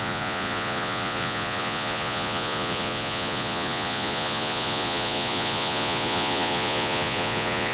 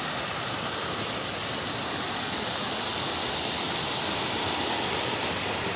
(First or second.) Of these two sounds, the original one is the second